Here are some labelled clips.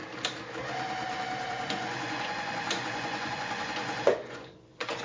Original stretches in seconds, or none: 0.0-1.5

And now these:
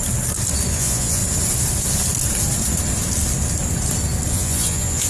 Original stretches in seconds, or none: 0.0-0.7; 1.2-4.3

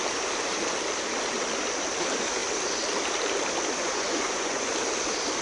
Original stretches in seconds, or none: 0.0-3.8; 4.7-5.4

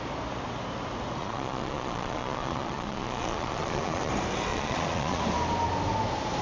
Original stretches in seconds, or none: 0.0-1.2; 4.1-4.5; 5.2-6.4

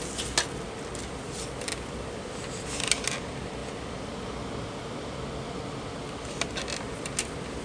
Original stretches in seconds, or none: 0.0-7.6

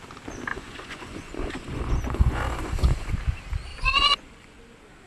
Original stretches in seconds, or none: 0.0-0.5; 3.1-3.7; 4.6-5.1

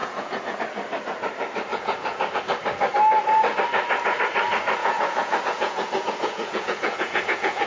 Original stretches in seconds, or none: 0.6-1.7; 2.4-4.8